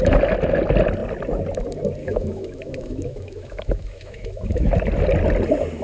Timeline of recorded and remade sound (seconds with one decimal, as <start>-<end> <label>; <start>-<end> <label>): 0.0-2.0 recorded; 2.0-4.7 remade; 4.7-5.8 recorded